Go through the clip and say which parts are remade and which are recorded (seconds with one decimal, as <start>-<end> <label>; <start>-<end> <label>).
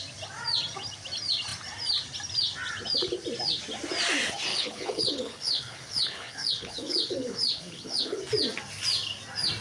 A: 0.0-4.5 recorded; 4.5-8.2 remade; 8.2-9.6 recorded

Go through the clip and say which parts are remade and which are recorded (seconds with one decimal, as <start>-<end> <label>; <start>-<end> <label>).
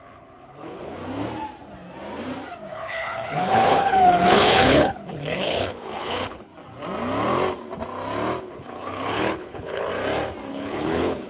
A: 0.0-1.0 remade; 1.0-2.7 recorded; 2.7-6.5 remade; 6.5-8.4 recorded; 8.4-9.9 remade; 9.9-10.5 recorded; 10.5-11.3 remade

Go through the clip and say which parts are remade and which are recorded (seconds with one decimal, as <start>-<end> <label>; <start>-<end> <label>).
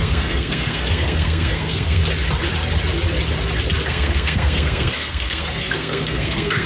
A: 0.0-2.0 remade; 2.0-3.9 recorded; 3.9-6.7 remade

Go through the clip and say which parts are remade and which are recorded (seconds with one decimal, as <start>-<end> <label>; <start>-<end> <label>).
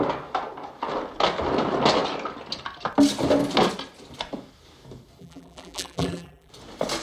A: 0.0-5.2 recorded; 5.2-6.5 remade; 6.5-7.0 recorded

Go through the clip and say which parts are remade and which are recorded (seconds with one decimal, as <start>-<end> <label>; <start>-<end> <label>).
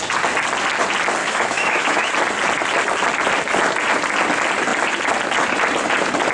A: 0.0-1.2 recorded; 1.2-2.1 remade; 2.1-6.3 recorded